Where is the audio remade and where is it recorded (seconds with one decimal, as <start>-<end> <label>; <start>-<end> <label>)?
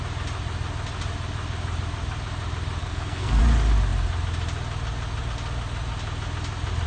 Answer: 0.0-2.8 recorded; 2.8-3.4 remade; 3.4-6.9 recorded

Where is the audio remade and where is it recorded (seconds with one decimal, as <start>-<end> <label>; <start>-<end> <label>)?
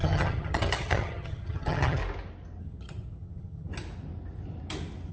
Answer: 0.0-2.0 remade; 2.0-2.6 recorded; 2.6-3.7 remade; 3.7-5.1 recorded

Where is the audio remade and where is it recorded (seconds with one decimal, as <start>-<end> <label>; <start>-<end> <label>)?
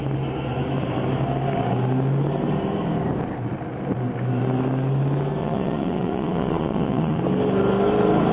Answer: 0.0-5.4 recorded; 5.4-7.2 remade; 7.2-8.3 recorded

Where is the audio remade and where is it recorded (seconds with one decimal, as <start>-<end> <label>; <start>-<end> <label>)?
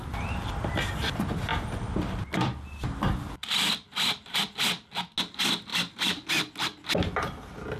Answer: 0.0-1.5 recorded; 1.5-4.7 remade; 4.7-5.7 recorded; 5.7-6.3 remade; 6.3-7.8 recorded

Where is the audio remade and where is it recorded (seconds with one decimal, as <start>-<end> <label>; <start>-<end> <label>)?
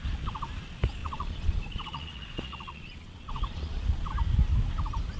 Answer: 0.0-1.0 recorded; 1.0-4.1 remade; 4.1-5.2 recorded